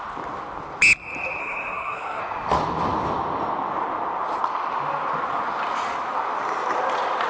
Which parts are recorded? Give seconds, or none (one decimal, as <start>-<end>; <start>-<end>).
0.0-1.4; 2.2-7.3

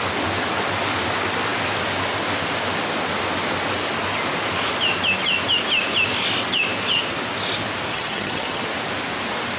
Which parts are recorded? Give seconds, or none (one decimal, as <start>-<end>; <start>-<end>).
0.0-7.9; 8.6-9.6

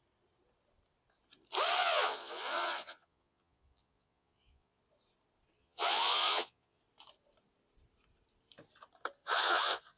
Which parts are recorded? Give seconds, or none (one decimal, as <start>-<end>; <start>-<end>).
0.0-1.8; 4.8-5.6; 6.8-9.2

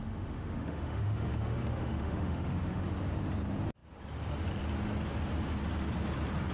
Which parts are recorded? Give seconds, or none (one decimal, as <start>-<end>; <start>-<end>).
2.9-6.5

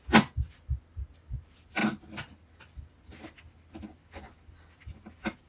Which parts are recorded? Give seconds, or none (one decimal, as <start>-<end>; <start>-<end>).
0.0-5.5

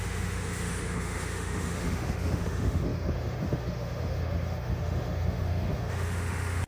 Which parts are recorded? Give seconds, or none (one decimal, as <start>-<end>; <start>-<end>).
none